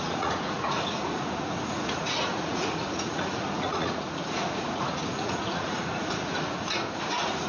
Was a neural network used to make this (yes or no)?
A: yes